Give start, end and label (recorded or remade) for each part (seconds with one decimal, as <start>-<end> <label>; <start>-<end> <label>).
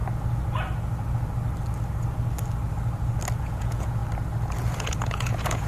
0.0-3.4 recorded; 3.4-4.0 remade; 4.0-4.8 recorded; 4.8-5.7 remade